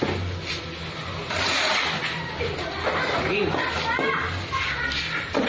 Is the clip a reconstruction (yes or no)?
no